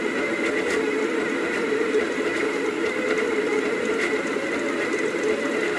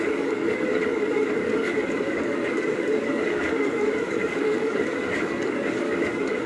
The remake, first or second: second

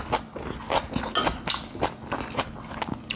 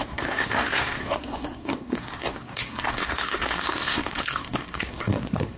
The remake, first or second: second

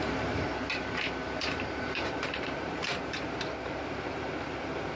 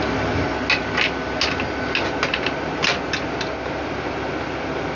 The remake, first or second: first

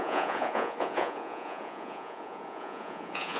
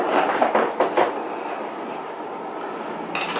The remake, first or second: first